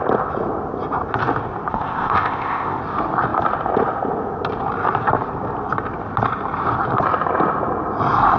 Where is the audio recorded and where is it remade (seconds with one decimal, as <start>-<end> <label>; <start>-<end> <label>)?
0.0-1.7 recorded; 1.7-2.8 remade; 2.8-8.4 recorded